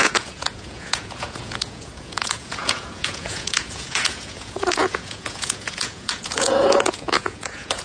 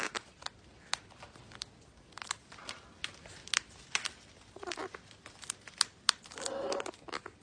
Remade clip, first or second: first